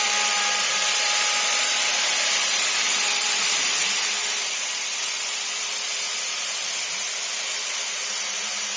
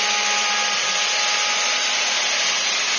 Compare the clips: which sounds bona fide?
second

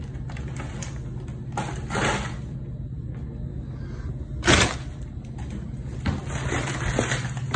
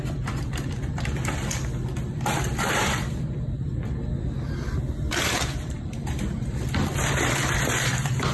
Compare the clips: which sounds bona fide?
first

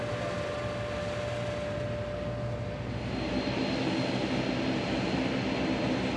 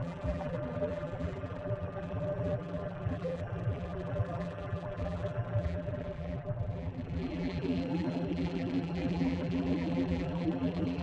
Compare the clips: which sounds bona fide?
first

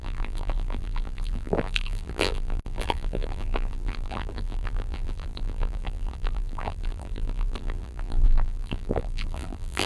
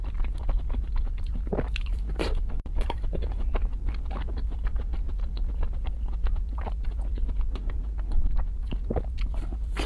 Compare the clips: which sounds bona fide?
second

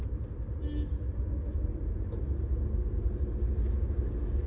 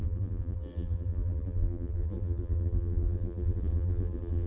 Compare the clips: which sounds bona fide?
first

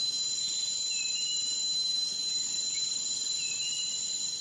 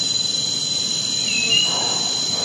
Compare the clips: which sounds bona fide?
second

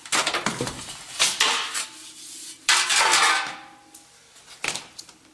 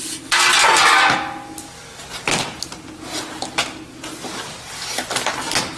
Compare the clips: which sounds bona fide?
second